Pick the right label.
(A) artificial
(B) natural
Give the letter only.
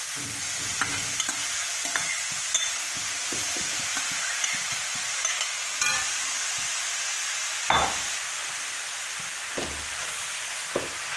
B